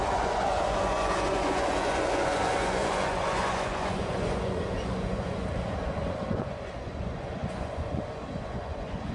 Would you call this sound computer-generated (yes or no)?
yes